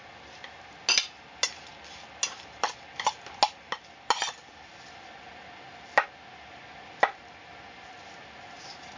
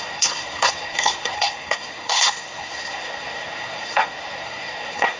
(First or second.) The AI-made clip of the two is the second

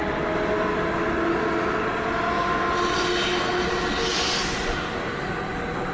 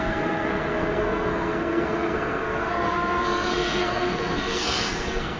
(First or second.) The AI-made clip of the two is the second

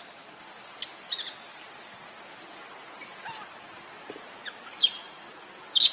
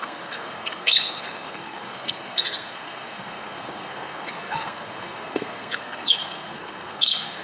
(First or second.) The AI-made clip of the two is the second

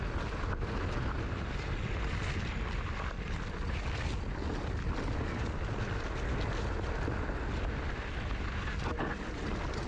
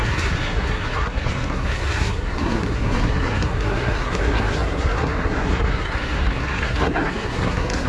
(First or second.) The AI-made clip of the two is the second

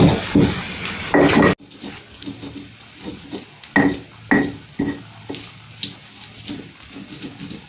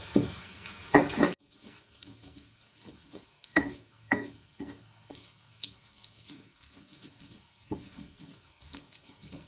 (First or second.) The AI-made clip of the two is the second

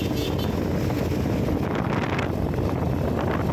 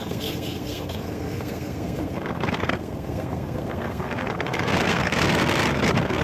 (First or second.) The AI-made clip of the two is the second